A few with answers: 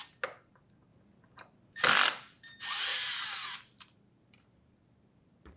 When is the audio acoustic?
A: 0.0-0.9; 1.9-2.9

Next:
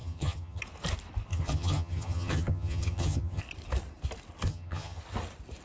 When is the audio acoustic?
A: 0.6-1.3; 3.4-4.5; 5.0-5.6

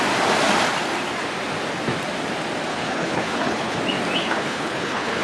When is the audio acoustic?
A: 0.0-2.7; 3.8-4.2

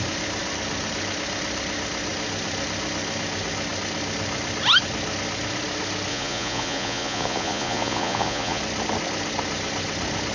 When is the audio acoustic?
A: 0.0-6.1; 8.6-10.3

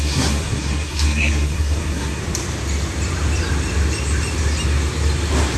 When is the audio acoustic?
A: 2.2-5.6

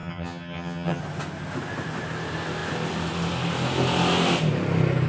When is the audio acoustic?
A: 1.0-5.1

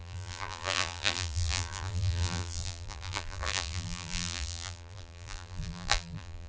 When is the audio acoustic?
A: none

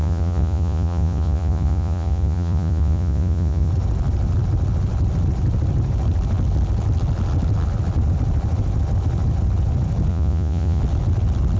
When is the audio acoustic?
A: 3.7-10.1; 10.8-11.6